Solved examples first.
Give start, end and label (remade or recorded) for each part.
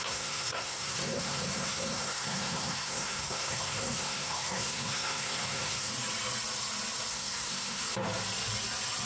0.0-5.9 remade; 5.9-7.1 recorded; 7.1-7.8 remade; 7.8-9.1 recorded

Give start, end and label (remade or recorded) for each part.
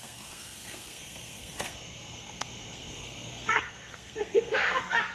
0.0-5.1 remade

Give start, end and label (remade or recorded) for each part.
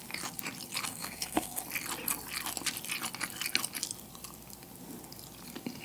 0.0-0.9 recorded; 0.9-1.6 remade; 1.6-5.8 recorded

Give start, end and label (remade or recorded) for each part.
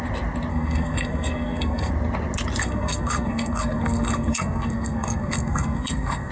0.0-0.5 recorded; 0.5-1.9 remade; 1.9-2.6 recorded; 2.6-6.3 remade